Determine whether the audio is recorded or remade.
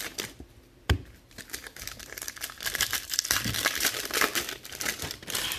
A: remade